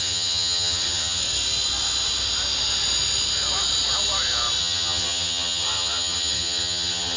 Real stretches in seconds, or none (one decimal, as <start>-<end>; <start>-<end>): 1.2-4.6